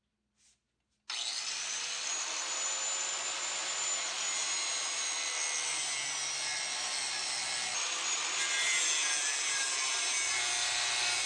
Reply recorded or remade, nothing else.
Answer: recorded